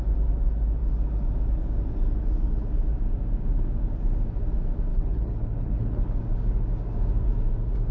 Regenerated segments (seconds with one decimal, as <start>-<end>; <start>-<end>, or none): 4.9-6.2